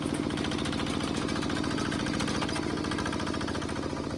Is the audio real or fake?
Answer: real